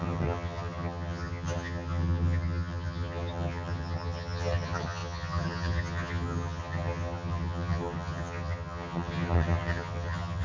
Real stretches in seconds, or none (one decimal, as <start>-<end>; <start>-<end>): none